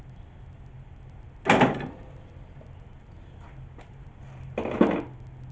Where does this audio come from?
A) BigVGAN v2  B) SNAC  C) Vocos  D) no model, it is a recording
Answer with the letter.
D